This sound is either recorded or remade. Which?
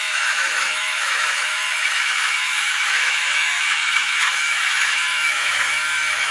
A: remade